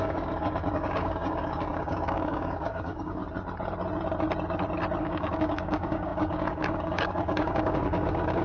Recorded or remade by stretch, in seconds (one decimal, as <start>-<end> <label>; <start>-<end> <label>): 0.0-3.2 remade; 3.2-5.0 recorded; 5.0-8.4 remade